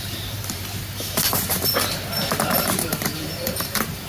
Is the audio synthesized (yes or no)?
yes